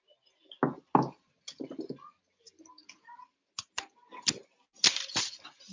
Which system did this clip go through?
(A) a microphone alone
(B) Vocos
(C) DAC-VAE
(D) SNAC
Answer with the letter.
A